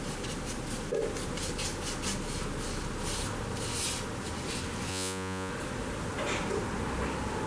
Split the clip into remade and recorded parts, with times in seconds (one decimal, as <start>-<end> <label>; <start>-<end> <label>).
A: 0.0-4.9 recorded; 4.9-5.5 remade; 5.5-7.5 recorded